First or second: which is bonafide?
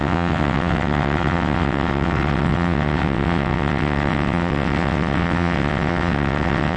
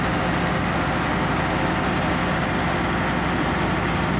second